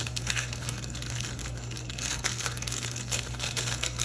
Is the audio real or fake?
fake